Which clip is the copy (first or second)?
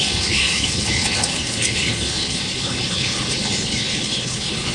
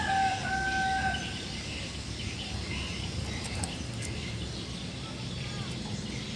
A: first